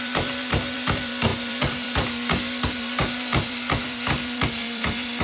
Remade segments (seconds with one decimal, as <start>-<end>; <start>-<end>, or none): 0.0-5.2